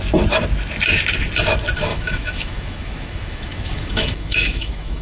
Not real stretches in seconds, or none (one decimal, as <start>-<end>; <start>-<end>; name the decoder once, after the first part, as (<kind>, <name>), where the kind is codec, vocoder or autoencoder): 1.9-5.0 (autoencoder, DAC-VAE)